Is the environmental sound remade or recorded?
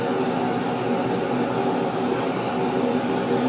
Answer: recorded